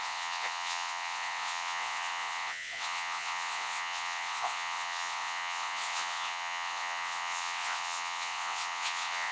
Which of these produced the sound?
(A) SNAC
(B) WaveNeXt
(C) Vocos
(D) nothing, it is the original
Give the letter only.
B